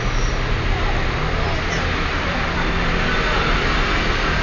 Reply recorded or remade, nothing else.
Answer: recorded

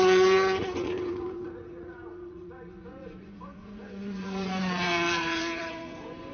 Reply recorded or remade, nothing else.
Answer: remade